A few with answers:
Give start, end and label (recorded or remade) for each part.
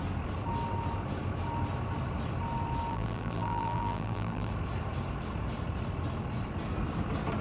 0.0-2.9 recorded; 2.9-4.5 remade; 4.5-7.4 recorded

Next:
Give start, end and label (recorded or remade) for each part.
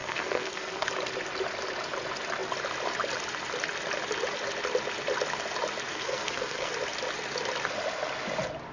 0.0-0.9 remade; 0.9-5.9 recorded; 5.9-6.7 remade; 6.7-8.7 recorded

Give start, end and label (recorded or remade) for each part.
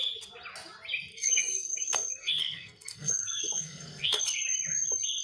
0.0-1.1 recorded; 1.1-4.2 remade; 4.2-5.2 recorded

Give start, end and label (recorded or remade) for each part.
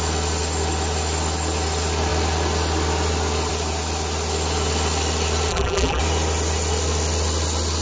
0.0-5.5 recorded; 5.5-6.0 remade; 6.0-7.8 recorded